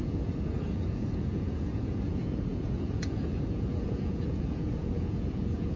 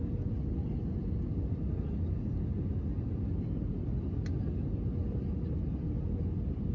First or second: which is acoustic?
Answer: second